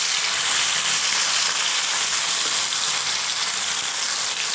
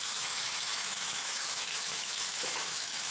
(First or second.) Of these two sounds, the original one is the first